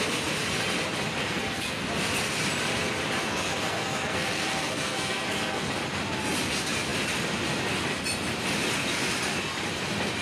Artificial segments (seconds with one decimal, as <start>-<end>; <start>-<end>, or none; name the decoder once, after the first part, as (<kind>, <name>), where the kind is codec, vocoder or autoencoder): 1.2-1.8 (codec, SNAC); 3.2-5.7